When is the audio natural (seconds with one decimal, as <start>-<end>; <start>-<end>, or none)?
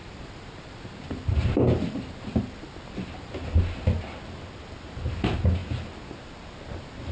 2.4-7.1